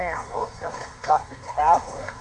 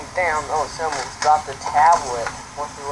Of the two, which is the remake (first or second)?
first